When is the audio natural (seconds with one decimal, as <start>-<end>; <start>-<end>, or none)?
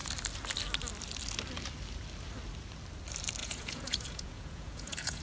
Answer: 0.0-3.4